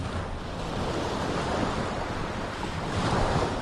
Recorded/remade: remade